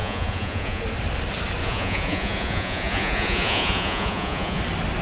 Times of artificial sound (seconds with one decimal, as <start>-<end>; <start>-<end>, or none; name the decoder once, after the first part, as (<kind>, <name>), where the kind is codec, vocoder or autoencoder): 0.0-0.8 (vocoder, Vocos); 1.6-4.6